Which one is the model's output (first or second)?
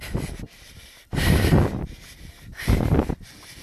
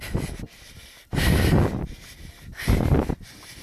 first